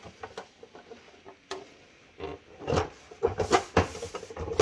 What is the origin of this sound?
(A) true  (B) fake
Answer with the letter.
A